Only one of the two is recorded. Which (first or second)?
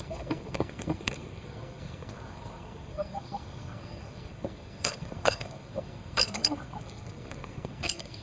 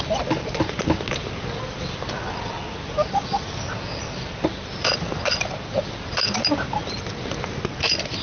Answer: second